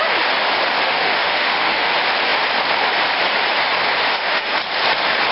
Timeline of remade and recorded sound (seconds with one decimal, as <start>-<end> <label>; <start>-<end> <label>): 0.0-0.8 recorded; 0.8-1.9 remade; 1.9-4.1 recorded; 4.1-4.6 remade; 4.6-5.3 recorded